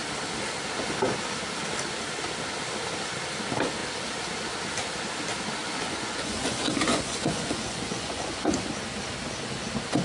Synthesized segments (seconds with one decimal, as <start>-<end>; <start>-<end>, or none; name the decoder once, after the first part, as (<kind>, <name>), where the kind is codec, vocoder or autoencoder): 5.6-8.7 (vocoder, Vocos)